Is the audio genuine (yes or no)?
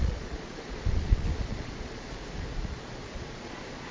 no